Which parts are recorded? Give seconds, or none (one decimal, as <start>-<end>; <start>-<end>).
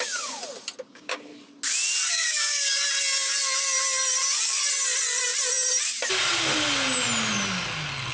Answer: 0.4-0.9; 1.3-2.1; 2.8-8.1